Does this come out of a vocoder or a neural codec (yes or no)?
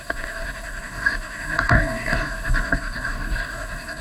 yes